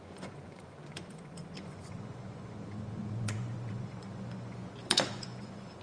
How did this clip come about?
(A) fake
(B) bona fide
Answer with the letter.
A